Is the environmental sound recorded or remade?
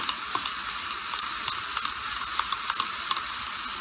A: recorded